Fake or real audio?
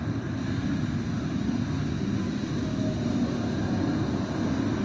real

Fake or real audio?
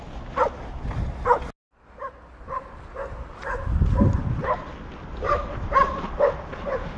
real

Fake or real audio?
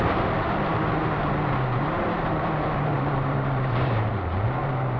fake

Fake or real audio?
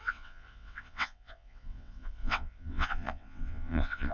fake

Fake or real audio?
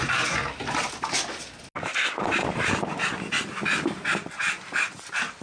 real